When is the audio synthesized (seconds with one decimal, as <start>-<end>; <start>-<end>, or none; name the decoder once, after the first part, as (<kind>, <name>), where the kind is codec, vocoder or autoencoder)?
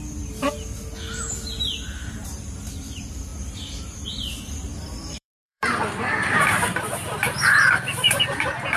2.0-2.7 (vocoder, BigVGAN v2); 3.3-8.2